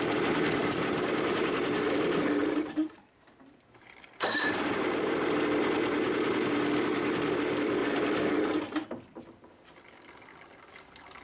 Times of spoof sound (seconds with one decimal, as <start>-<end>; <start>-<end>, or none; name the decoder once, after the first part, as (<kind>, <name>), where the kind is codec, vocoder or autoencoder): 0.6-5.2 (vocoder, BigVGAN v2); 7.8-8.4